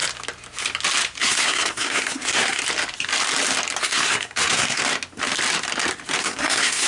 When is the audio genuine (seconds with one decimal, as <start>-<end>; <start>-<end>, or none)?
0.0-1.2; 2.6-3.8; 4.8-6.2